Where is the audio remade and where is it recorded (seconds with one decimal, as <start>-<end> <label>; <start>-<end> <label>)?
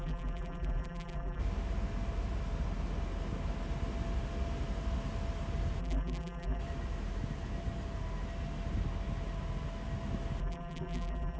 0.0-1.4 remade; 1.4-5.8 recorded; 5.8-6.6 remade; 6.6-10.4 recorded; 10.4-11.4 remade